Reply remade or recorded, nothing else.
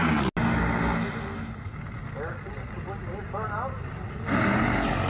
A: recorded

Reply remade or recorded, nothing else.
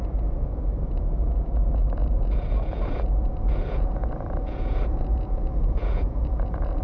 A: remade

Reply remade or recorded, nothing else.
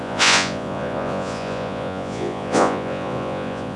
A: remade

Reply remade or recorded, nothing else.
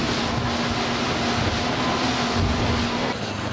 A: recorded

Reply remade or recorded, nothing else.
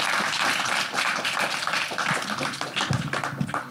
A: recorded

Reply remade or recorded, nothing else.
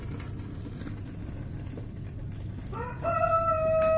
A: recorded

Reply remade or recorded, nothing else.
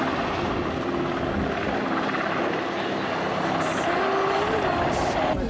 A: recorded